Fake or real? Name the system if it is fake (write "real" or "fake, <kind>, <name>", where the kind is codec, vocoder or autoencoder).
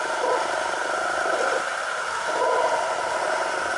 real